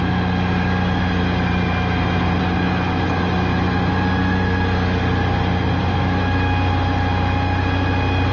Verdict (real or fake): real